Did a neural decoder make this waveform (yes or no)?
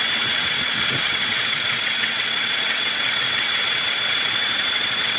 yes